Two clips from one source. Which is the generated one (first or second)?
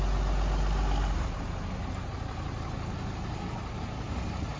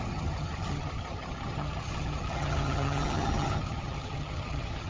second